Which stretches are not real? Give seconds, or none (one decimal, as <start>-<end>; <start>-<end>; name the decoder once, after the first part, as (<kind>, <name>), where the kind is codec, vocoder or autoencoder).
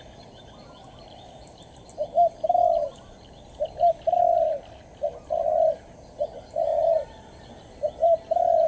4.3-5.3 (vocoder, BigVGAN v2); 6.7-7.4